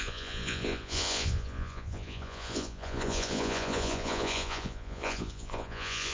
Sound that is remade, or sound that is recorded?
remade